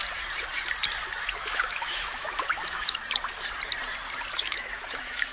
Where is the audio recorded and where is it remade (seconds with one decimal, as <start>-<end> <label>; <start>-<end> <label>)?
0.0-1.4 recorded; 1.4-3.0 remade; 3.0-4.4 recorded; 4.4-5.3 remade